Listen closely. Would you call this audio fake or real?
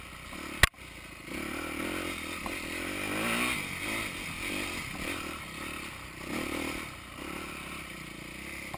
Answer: real